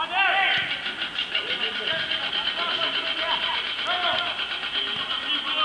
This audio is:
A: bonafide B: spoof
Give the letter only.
A